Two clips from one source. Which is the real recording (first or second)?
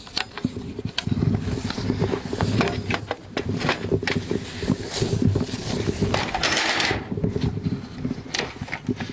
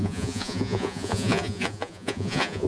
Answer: first